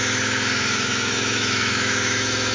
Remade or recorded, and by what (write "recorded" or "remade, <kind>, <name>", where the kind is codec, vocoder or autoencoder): remade, autoencoder, DAC-VAE